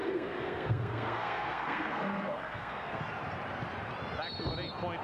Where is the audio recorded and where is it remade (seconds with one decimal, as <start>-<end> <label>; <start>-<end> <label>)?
0.0-3.0 remade; 3.0-5.0 recorded

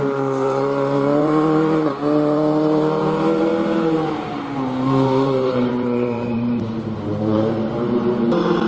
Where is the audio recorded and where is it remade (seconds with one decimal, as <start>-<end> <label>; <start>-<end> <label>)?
0.0-8.7 remade

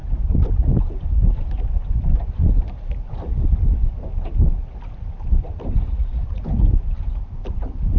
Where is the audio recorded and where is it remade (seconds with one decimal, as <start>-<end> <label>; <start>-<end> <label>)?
0.0-5.9 recorded; 5.9-6.4 remade; 6.4-8.0 recorded

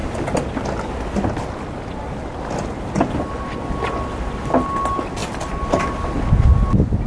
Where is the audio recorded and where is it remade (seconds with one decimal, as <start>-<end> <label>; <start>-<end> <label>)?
0.0-7.1 recorded